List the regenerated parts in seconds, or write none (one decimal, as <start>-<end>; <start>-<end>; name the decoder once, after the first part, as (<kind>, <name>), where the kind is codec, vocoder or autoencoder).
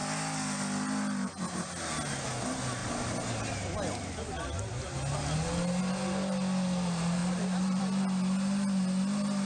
7.2-7.8 (vocoder, BigVGAN v2)